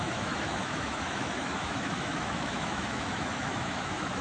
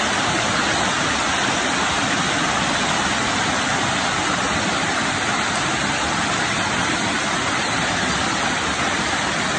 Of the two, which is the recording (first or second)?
second